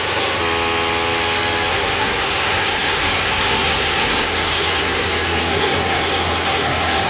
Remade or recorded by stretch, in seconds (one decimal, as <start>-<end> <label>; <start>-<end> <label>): 0.0-0.4 remade; 0.4-1.7 recorded; 1.7-7.1 remade